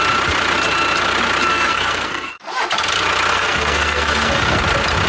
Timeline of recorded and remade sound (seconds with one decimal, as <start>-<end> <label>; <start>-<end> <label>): 0.0-1.5 recorded; 1.5-2.5 remade; 2.5-3.3 recorded; 3.3-4.6 remade; 4.6-5.1 recorded